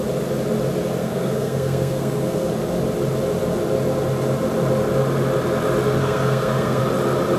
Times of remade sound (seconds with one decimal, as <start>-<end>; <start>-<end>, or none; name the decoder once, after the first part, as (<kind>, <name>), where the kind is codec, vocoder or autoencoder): 1.0-2.5 (codec, SNAC); 6.0-6.8